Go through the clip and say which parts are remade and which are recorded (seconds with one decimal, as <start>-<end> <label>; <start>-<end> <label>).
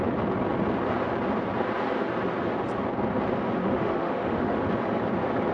0.0-3.6 recorded; 3.6-4.6 remade; 4.6-5.5 recorded